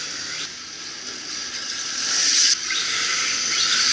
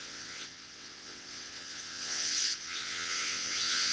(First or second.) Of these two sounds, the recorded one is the first